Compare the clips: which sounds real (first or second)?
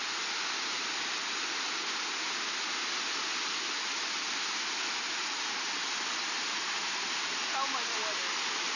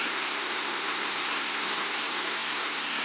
first